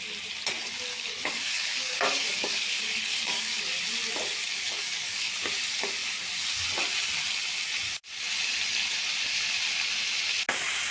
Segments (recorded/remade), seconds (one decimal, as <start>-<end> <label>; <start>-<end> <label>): 0.0-0.9 recorded; 0.9-3.6 remade; 3.6-4.4 recorded; 4.4-5.3 remade; 5.3-10.9 recorded